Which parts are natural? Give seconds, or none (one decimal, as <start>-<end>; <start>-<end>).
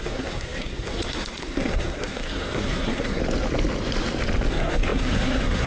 3.2-4.5